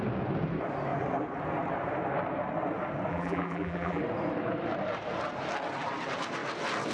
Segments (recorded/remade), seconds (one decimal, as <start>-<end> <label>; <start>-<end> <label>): 0.0-3.1 recorded; 3.1-4.0 remade; 4.0-6.9 recorded